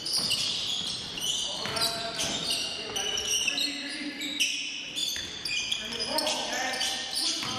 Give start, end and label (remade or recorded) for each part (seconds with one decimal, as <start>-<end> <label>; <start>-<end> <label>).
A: 0.0-7.6 recorded